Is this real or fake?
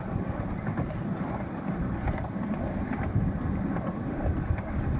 fake